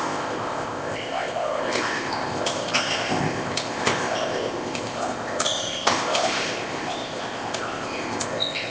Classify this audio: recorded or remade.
remade